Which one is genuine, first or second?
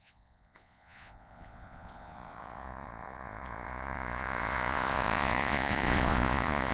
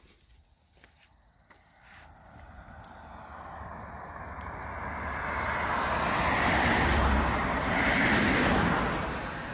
second